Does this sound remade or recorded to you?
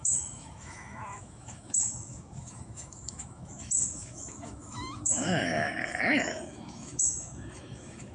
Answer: remade